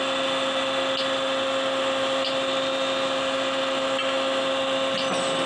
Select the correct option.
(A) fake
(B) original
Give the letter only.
B